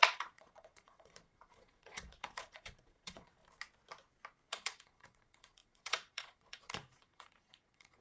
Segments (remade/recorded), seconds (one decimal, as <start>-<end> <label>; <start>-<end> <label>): 0.0-3.4 remade; 3.4-4.5 recorded; 4.5-8.0 remade